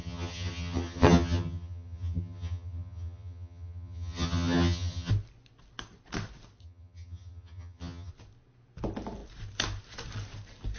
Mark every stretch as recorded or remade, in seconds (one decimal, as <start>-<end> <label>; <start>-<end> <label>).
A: 0.0-5.1 remade; 5.1-6.6 recorded; 6.6-8.1 remade; 8.1-10.8 recorded